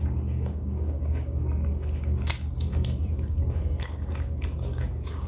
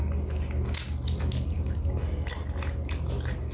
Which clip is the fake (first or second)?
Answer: first